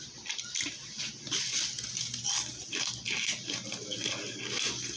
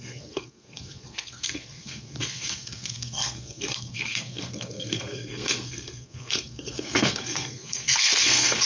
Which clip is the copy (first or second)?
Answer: second